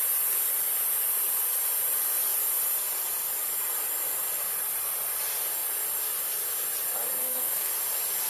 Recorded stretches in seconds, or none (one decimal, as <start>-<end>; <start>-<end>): 0.0-7.2; 7.7-8.3